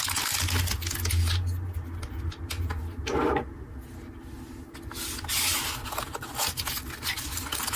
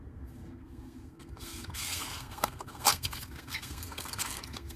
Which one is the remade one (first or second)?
second